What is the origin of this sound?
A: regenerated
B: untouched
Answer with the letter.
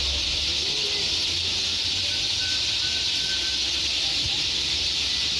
B